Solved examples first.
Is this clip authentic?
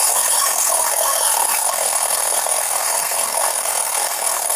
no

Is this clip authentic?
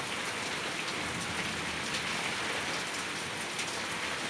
yes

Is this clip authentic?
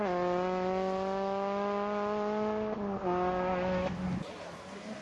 yes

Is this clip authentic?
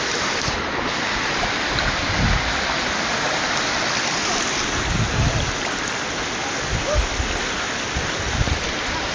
yes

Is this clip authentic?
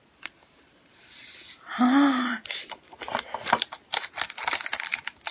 yes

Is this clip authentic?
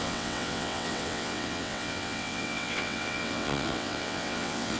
no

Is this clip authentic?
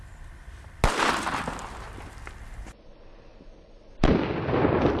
yes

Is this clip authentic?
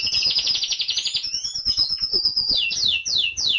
no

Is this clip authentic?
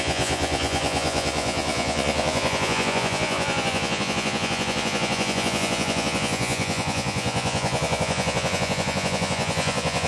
no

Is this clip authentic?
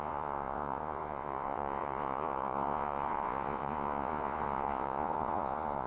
no